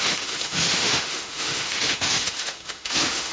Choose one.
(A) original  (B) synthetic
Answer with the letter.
B